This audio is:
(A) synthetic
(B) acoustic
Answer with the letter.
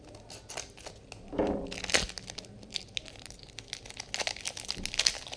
B